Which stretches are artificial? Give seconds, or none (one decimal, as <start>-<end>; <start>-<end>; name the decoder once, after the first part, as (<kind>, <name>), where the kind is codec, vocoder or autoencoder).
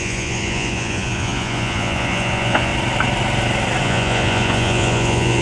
0.0-2.7 (vocoder, Vocos); 3.8-5.4